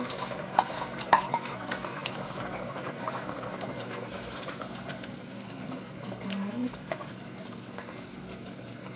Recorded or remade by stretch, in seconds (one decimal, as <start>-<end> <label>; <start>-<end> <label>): 0.0-9.0 remade